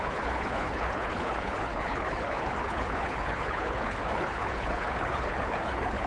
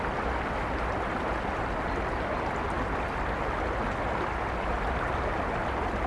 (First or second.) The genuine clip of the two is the second